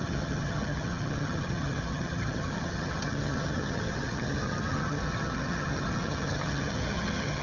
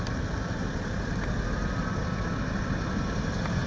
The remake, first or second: first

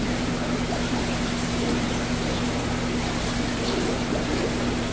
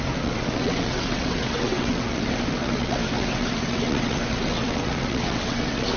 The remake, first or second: second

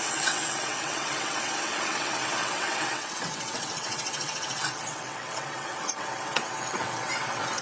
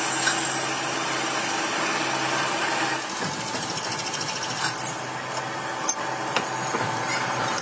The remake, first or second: first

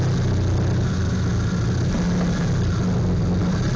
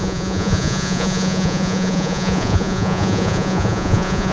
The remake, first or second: second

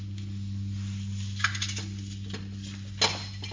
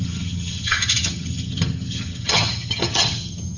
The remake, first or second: second